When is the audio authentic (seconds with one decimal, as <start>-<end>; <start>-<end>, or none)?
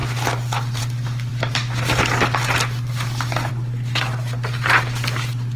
0.0-5.6